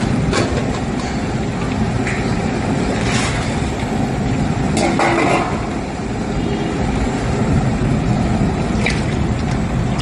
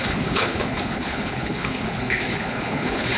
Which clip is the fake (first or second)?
second